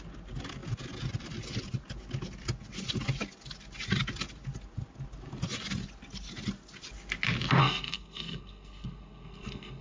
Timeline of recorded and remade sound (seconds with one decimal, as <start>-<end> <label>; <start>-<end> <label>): 0.0-7.6 recorded; 7.6-9.8 remade